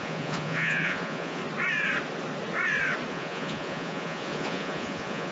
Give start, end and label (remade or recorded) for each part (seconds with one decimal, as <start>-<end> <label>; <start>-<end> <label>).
0.0-1.4 remade; 1.4-3.1 recorded; 3.1-5.3 remade